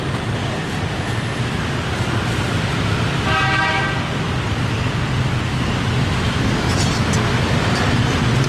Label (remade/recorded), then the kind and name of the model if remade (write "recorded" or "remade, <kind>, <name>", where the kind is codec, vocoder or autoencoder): recorded